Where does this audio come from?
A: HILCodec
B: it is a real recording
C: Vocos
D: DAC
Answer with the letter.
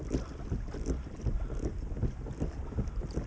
B